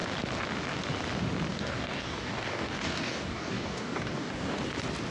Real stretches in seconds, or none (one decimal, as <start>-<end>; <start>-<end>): 0.0-1.5; 4.6-5.1